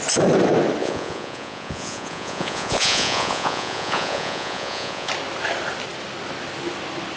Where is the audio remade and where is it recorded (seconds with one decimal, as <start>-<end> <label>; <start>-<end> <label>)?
0.0-0.8 recorded; 0.8-5.1 remade; 5.1-7.2 recorded